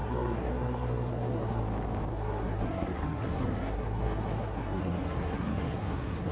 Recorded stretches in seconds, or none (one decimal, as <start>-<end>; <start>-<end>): 1.6-2.1